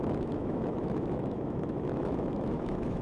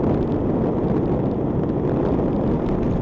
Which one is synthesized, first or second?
first